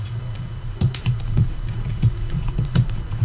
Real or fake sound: fake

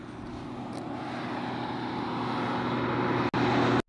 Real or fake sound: real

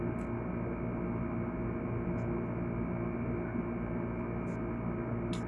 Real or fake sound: real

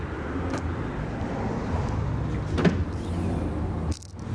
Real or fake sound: real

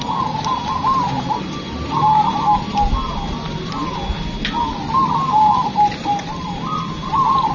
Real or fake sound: real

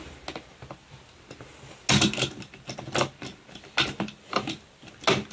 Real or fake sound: real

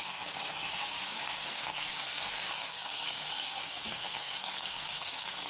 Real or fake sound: fake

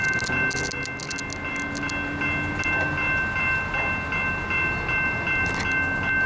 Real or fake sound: real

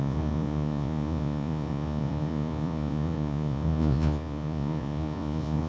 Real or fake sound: fake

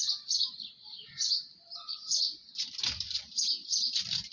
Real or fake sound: real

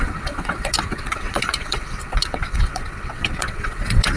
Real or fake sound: fake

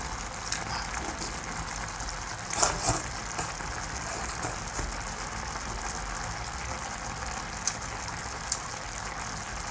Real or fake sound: real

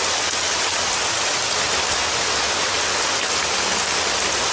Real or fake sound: real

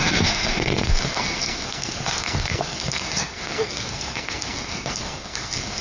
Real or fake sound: fake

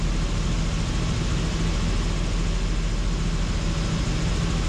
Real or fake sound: real